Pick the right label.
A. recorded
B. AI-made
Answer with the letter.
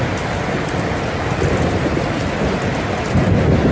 A